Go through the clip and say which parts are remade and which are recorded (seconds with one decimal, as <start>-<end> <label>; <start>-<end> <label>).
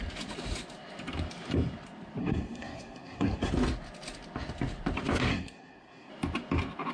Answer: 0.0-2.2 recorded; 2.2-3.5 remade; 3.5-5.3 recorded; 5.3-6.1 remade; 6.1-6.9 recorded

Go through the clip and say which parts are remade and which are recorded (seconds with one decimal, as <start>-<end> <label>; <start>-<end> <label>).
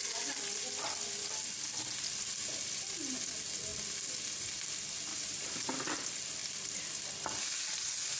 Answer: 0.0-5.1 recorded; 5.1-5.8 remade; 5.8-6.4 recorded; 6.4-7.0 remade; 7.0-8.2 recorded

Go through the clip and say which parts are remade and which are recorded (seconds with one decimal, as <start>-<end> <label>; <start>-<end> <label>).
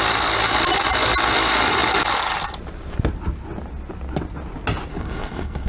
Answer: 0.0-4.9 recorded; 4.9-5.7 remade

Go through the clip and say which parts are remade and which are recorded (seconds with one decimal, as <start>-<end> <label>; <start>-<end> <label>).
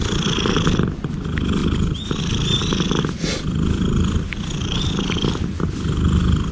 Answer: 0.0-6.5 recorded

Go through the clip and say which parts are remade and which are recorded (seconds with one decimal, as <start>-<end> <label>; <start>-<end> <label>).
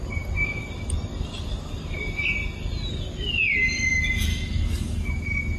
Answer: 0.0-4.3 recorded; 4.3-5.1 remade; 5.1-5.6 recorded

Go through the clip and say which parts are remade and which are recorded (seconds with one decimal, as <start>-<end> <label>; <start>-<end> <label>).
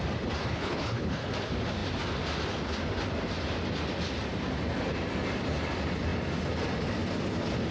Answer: 0.0-0.5 recorded; 0.5-1.3 remade; 1.3-7.7 recorded